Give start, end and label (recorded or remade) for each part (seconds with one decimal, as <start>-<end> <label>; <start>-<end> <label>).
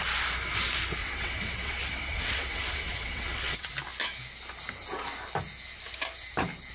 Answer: 0.0-1.0 recorded; 1.0-3.7 remade; 3.7-6.7 recorded